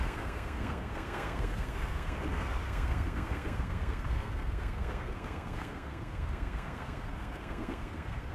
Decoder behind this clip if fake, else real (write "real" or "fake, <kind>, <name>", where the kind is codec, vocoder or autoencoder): fake, codec, SNAC